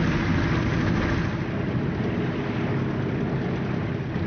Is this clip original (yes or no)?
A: yes